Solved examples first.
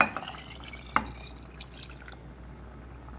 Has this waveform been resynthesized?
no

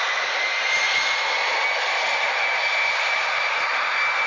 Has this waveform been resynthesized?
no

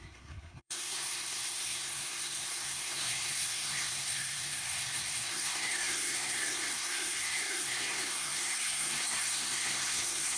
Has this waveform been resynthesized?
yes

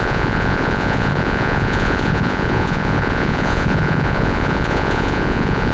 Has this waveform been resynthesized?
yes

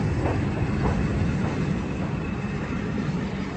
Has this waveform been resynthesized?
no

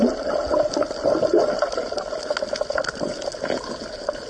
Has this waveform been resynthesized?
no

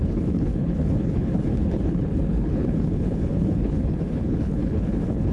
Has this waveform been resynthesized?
yes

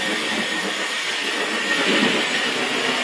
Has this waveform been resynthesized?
no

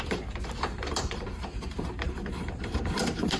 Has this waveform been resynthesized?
yes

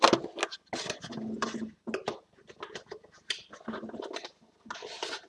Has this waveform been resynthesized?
no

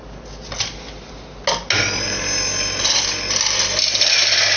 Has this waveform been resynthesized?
no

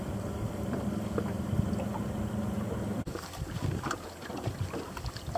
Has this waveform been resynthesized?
no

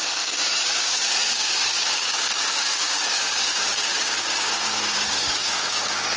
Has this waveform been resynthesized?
yes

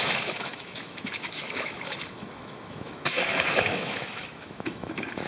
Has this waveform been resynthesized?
yes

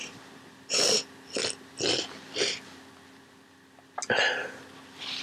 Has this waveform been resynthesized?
no